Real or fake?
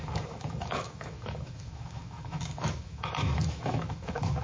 fake